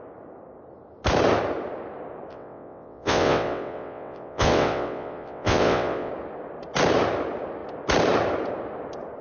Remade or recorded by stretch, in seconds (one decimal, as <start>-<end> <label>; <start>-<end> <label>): 0.0-2.3 recorded; 2.3-6.1 remade; 6.1-9.2 recorded